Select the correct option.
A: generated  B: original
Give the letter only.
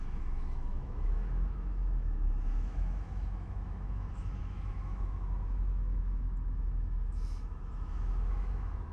A